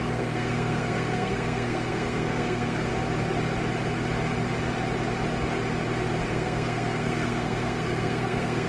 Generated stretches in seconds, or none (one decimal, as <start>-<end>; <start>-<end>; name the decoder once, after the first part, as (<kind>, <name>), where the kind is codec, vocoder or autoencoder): 0.0-2.9 (codec, SNAC); 6.2-8.7